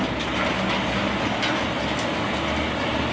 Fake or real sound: real